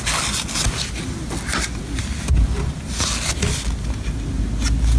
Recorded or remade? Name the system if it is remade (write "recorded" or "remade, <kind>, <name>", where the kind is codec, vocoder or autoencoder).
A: recorded